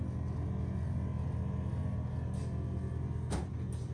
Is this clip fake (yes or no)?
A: no